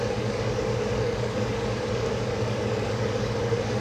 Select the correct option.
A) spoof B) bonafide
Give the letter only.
A